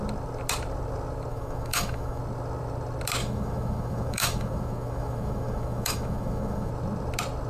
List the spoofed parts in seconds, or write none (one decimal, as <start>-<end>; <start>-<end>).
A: 1.3-2.2; 3.2-6.7